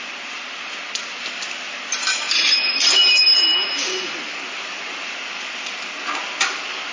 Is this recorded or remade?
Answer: recorded